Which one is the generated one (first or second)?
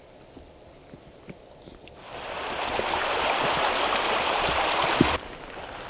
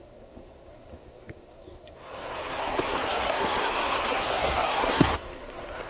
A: second